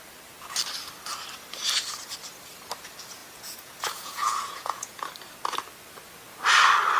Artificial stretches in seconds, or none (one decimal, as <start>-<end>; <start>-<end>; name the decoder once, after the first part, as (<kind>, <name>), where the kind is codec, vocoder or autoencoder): 3.2-5.1 (vocoder, Vocos)